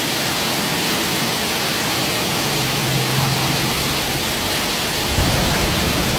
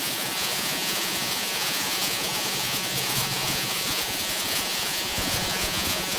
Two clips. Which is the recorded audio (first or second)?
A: first